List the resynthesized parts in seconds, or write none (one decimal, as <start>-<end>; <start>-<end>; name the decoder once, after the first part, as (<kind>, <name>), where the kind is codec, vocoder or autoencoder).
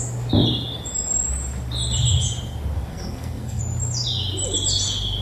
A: 2.9-3.6 (codec, SNAC)